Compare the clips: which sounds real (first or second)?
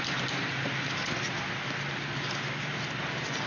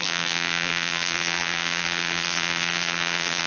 first